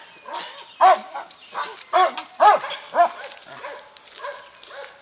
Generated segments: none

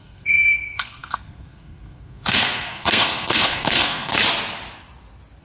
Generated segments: 0.0-4.1

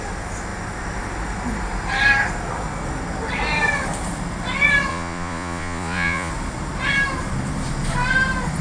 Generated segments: 4.9-6.3

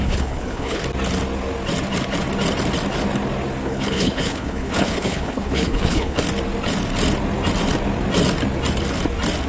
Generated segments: 0.0-0.8; 3.6-6.2

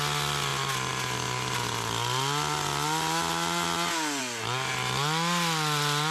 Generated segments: none

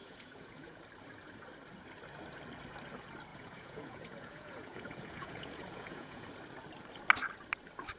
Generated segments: 0.0-0.8; 3.3-6.3

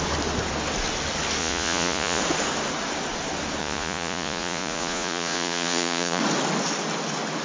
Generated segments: 1.4-2.2; 3.6-6.2

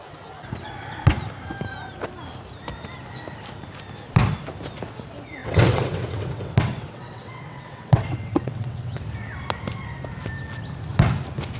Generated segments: 5.4-9.0